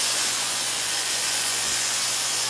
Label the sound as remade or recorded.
remade